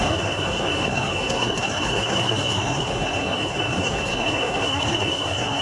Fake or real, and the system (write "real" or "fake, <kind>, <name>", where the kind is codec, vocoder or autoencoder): fake, codec, SNAC